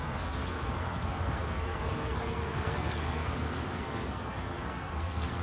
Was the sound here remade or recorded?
remade